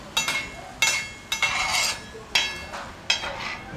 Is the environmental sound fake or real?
real